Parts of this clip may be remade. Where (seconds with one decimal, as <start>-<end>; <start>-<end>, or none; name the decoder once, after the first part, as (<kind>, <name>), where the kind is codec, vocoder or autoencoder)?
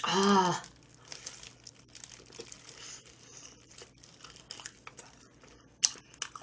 none